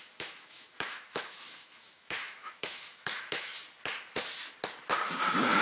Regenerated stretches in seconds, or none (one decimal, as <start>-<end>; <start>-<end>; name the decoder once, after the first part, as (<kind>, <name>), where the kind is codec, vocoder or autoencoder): 0.0-3.5 (autoencoder, DAC-VAE)